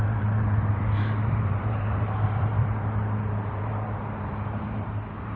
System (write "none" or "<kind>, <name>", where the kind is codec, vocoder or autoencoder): vocoder, BigVGAN v2